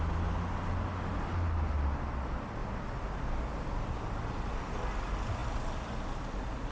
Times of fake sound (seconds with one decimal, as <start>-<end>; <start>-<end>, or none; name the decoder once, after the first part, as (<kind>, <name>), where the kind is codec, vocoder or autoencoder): none